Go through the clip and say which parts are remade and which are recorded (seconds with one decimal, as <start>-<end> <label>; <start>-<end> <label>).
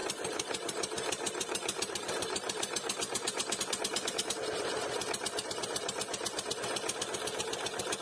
0.0-3.6 remade; 3.6-8.0 recorded